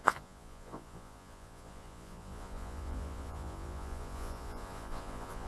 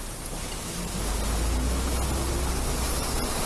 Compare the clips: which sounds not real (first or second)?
first